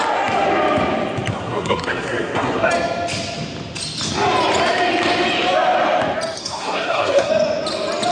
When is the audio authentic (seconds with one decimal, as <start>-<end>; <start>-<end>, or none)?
0.0-1.3; 2.7-6.4; 7.3-8.1

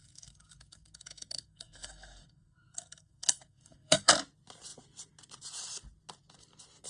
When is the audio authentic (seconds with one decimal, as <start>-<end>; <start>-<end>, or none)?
4.1-6.9

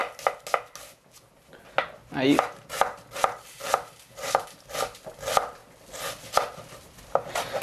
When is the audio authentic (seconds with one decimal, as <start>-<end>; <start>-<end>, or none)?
0.0-2.7; 5.6-6.2

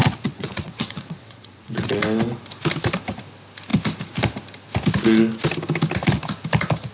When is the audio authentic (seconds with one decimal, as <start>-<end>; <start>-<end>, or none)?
2.0-6.9

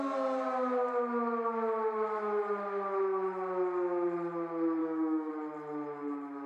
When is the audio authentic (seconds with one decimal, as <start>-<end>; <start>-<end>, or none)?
0.0-4.8; 5.3-6.5